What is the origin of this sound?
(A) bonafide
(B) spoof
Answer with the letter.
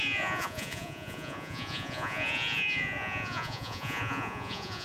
B